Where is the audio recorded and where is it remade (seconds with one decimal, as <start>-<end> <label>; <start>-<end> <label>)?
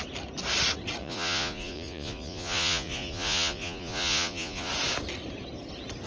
0.0-1.0 recorded; 1.0-4.7 remade; 4.7-6.1 recorded